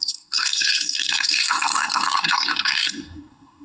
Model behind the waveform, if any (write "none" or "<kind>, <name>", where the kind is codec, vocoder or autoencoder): codec, SNAC